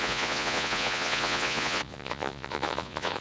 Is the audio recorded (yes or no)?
no